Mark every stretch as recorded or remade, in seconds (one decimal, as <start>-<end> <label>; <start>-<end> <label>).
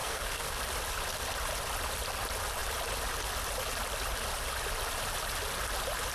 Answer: 0.0-0.6 remade; 0.6-6.1 recorded